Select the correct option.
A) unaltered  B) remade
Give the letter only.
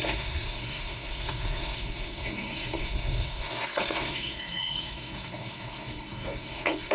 B